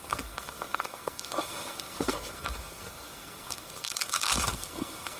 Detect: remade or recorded remade